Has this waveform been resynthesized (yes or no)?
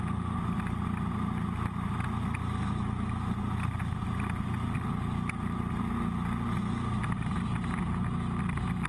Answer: no